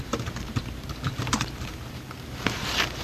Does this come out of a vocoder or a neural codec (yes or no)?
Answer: yes